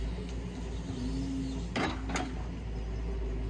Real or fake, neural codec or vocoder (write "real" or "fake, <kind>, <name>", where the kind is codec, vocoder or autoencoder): real